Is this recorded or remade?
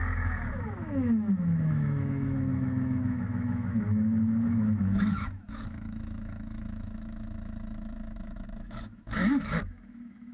remade